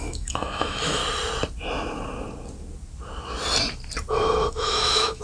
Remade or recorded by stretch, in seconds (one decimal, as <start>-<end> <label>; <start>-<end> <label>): 0.0-1.0 remade; 1.0-4.1 recorded; 4.1-5.2 remade